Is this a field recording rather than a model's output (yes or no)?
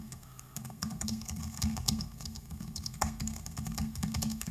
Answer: no